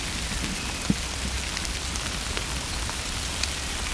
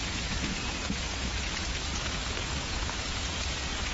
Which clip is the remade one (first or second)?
second